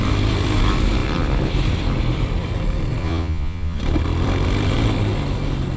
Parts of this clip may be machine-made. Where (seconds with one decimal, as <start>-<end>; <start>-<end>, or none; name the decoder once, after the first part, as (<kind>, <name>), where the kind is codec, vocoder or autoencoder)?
3.0-3.8 (vocoder, Vocos)